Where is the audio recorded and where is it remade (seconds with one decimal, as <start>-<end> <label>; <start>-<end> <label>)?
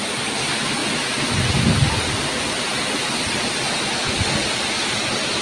0.0-5.4 recorded